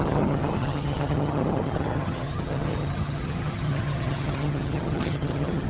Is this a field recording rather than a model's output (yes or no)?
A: no